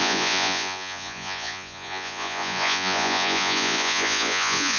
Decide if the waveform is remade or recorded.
remade